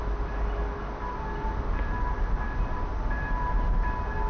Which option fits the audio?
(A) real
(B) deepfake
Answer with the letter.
A